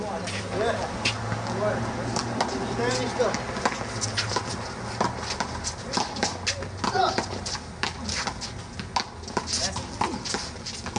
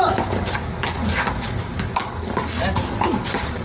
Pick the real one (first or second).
first